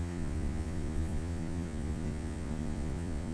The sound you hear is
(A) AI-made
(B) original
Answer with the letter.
A